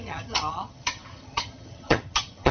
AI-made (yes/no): yes